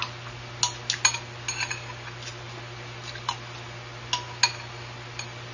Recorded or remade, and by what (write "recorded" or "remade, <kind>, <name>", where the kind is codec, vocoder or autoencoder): recorded